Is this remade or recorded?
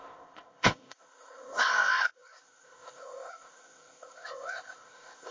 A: remade